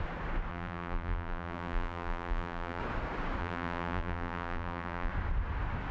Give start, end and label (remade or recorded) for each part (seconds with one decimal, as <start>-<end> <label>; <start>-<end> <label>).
0.0-0.5 recorded; 0.5-2.8 remade; 2.8-3.4 recorded; 3.4-5.1 remade; 5.1-5.9 recorded

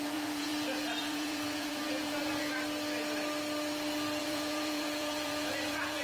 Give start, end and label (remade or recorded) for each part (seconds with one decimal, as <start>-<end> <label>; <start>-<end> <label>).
0.0-0.5 remade; 0.5-1.0 recorded; 1.0-2.5 remade; 2.5-4.2 recorded; 4.2-6.0 remade

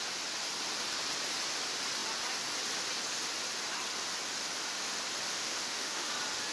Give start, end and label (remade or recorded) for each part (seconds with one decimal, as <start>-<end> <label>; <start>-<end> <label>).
0.0-5.4 recorded; 5.4-6.1 remade; 6.1-6.5 recorded